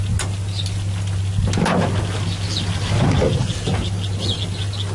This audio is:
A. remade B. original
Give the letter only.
B